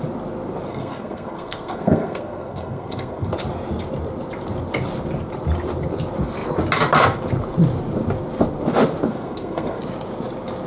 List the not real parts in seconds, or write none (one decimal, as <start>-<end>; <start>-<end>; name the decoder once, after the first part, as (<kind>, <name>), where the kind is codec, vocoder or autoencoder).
0.7-3.3 (codec, SNAC); 9.1-9.8